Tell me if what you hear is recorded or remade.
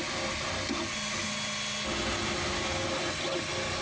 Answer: recorded